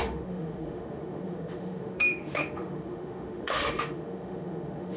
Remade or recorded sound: remade